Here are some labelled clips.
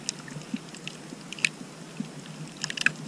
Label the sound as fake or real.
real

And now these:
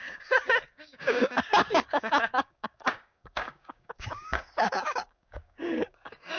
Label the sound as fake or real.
fake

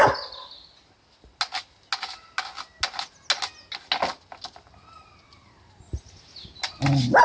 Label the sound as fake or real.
real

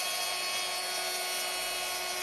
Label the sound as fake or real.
real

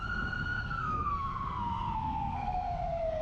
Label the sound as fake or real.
fake